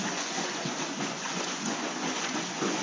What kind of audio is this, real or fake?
fake